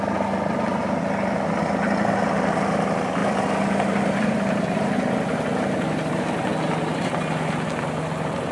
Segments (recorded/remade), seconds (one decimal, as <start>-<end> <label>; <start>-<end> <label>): 0.0-8.5 recorded